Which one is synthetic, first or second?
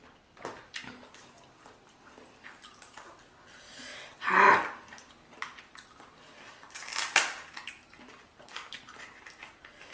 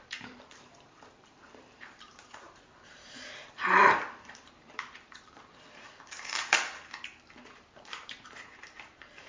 second